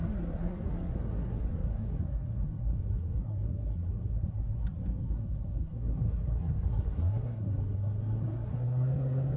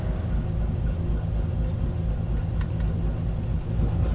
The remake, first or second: first